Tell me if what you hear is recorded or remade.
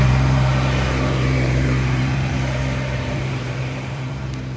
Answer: remade